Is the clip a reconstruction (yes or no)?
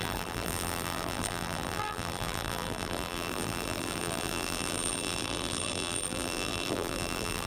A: yes